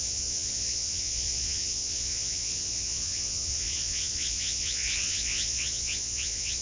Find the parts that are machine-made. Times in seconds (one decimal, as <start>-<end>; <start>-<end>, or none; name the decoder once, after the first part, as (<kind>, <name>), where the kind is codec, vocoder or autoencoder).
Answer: 0.0-6.6 (vocoder, Vocos)